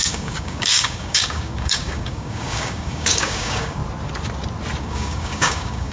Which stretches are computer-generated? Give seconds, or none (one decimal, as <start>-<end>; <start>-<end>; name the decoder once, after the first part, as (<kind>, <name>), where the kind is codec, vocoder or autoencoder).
0.0-3.8 (codec, DAC); 4.8-5.9